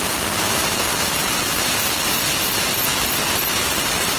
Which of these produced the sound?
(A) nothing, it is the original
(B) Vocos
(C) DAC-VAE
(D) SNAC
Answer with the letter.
A